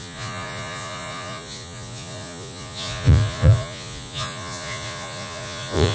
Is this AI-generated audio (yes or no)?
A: yes